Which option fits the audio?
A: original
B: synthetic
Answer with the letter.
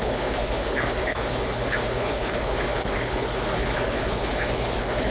B